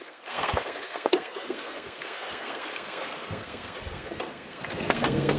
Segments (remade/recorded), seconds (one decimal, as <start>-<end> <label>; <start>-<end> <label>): 0.0-5.4 remade